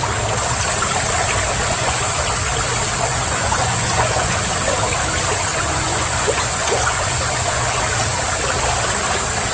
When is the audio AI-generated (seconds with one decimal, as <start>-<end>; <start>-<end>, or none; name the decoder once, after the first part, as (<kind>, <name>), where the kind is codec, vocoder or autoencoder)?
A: 1.6-2.2 (vocoder, Vocos); 3.1-4.4; 5.5-7.8